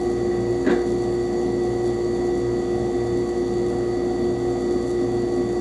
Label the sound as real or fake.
real